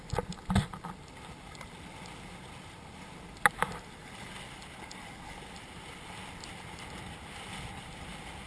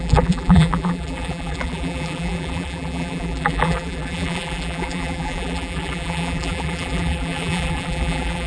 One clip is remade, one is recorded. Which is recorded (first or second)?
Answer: first